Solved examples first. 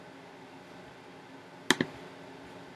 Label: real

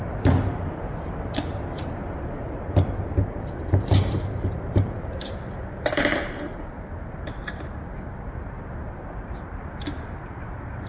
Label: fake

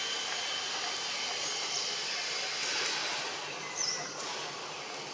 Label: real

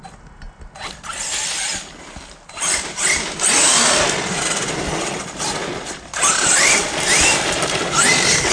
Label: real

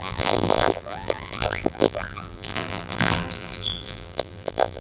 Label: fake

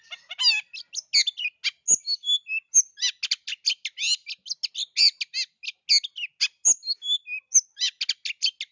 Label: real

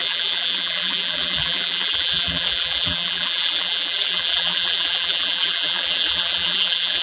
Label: fake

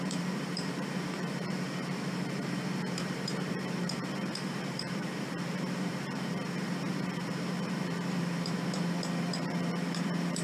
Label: fake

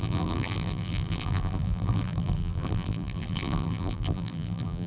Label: fake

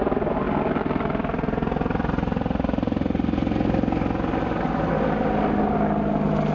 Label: real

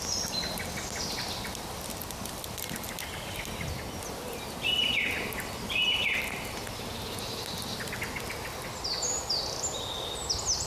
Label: real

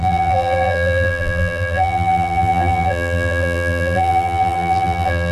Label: fake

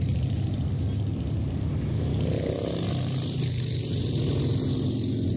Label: real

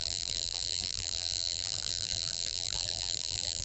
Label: fake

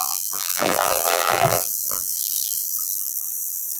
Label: fake